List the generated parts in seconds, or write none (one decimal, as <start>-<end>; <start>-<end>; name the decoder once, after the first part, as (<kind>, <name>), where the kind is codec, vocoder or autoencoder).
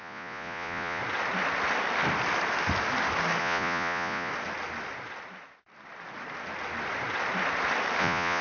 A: 0.0-1.0 (vocoder, Vocos); 3.4-4.3; 8.0-8.4